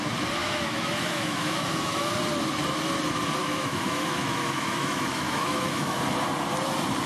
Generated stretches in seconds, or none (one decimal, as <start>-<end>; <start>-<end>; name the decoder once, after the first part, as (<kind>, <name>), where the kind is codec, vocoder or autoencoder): 0.4-2.1 (autoencoder, DAC-VAE); 3.4-6.0